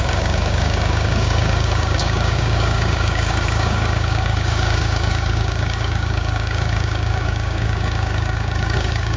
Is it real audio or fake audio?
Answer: fake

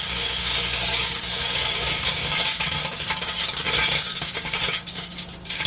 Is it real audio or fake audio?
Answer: fake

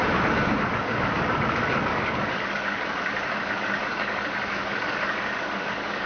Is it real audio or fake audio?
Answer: fake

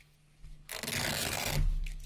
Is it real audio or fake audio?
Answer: real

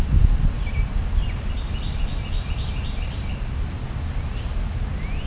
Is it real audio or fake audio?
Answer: real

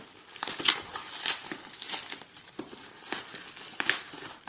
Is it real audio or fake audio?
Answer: real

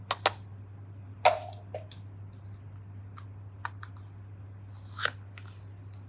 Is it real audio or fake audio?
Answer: real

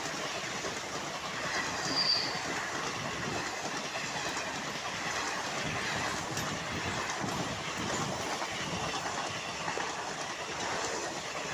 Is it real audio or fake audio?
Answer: real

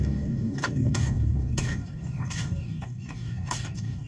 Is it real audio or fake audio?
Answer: fake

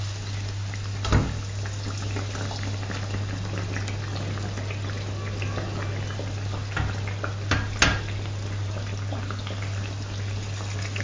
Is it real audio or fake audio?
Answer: real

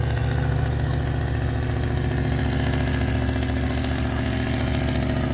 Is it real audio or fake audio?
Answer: real